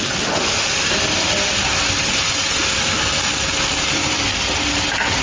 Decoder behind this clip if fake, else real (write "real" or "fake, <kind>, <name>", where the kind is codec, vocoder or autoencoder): real